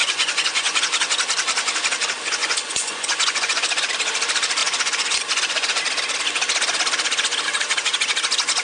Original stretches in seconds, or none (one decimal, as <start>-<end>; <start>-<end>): 0.8-2.4; 3.9-4.6; 5.8-8.6